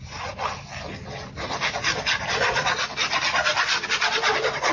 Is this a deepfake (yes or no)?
no